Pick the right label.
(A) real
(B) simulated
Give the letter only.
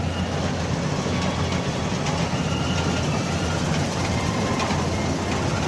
A